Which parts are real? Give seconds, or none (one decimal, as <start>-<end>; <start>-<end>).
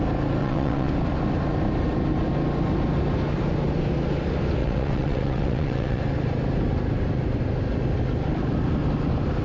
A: 0.0-0.4; 0.9-4.6; 6.0-9.4